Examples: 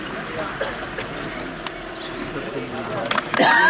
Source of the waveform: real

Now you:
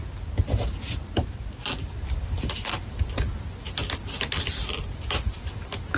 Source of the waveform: real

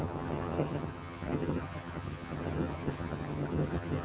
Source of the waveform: fake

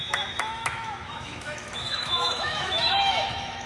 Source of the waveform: fake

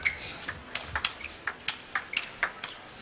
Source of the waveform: real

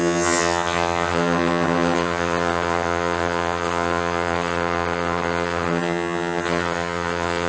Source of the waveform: fake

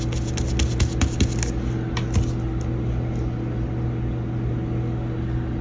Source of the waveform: real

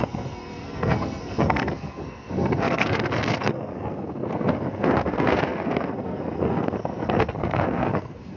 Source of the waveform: fake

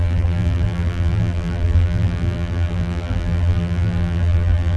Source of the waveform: fake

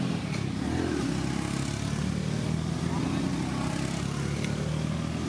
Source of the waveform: real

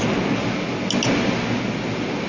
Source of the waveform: real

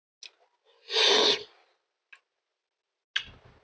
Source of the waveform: real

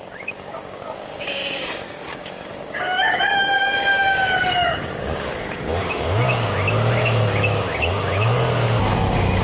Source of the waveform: fake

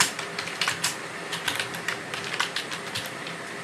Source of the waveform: real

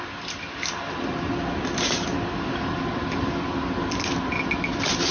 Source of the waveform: real